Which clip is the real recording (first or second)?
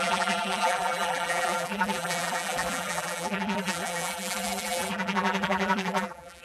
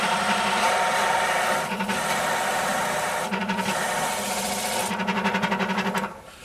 second